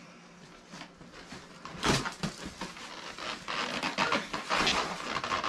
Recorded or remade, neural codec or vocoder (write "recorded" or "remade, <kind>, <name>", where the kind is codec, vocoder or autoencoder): recorded